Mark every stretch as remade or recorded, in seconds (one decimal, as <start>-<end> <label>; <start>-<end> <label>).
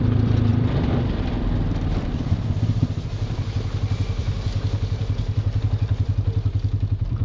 0.0-7.2 remade